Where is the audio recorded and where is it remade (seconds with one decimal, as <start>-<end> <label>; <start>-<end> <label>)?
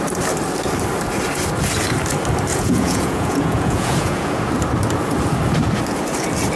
0.0-2.5 recorded; 2.5-4.5 remade; 4.5-6.6 recorded